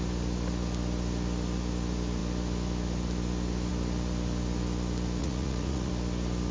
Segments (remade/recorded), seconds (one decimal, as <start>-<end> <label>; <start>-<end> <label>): 0.0-5.2 recorded; 5.2-5.9 remade; 5.9-6.5 recorded

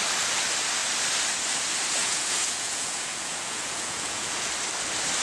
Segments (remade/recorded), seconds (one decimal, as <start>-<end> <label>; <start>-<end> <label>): 0.0-2.0 recorded; 2.0-4.5 remade; 4.5-5.2 recorded

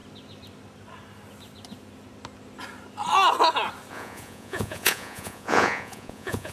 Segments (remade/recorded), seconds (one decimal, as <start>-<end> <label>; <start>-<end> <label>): 0.0-3.9 recorded; 3.9-6.5 remade

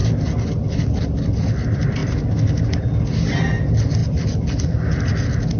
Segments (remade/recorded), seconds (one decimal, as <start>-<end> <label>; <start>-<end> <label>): 0.0-5.6 recorded

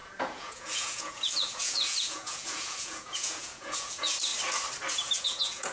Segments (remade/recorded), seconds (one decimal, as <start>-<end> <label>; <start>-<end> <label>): 0.0-4.3 remade; 4.3-4.9 recorded; 4.9-5.7 remade

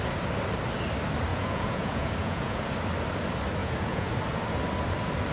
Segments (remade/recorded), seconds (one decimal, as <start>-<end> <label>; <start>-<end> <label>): 0.0-1.3 recorded; 1.3-2.6 remade; 2.6-3.6 recorded; 3.6-4.1 remade; 4.1-5.3 recorded

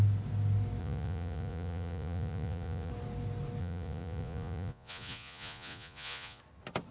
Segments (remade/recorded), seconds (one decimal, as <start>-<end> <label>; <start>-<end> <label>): 0.0-0.8 recorded; 0.8-2.9 remade; 2.9-3.6 recorded; 3.6-6.4 remade; 6.4-6.9 recorded